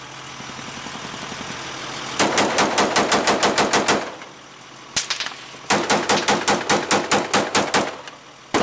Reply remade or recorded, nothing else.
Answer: recorded